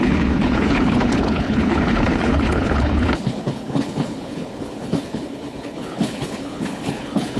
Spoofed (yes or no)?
yes